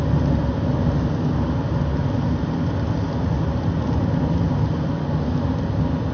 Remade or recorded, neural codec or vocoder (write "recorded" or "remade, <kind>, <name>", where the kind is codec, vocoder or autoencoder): recorded